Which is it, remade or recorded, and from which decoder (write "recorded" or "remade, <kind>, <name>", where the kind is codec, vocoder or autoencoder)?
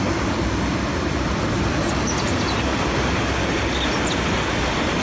recorded